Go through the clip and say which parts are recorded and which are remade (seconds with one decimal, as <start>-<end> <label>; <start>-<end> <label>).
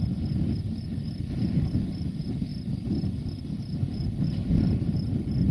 0.0-5.5 recorded